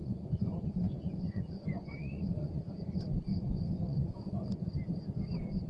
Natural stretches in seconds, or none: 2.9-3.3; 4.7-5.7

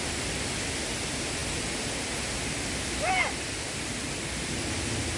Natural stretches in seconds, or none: 0.0-5.2

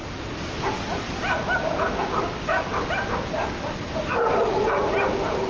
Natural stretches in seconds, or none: 0.0-5.5

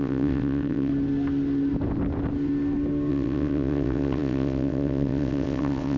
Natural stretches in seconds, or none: 0.9-3.1

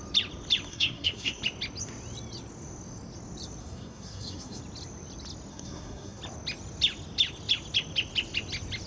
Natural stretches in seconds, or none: 0.0-0.7; 1.4-3.6; 4.6-5.5; 6.2-8.9